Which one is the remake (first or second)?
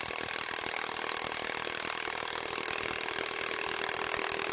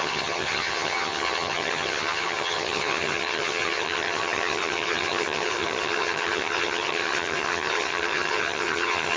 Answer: second